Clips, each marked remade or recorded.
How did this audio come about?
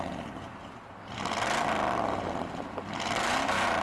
recorded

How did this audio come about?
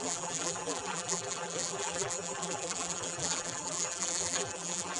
remade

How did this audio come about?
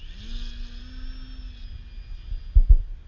recorded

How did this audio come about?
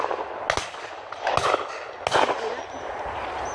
recorded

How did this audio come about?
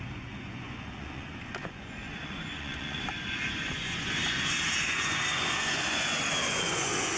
remade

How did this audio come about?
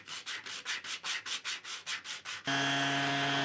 recorded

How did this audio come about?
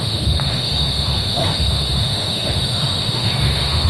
remade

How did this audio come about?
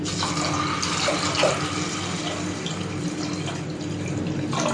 recorded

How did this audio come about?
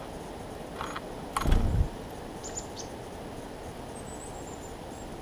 recorded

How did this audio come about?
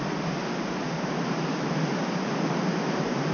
recorded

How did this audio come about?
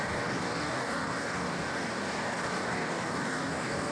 remade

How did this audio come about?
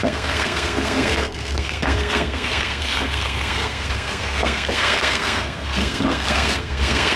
remade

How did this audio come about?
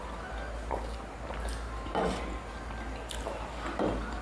recorded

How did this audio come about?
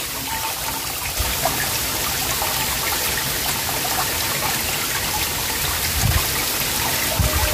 recorded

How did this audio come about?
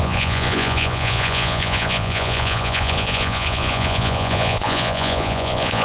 remade